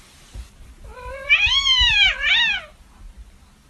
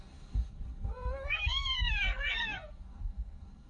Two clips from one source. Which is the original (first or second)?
first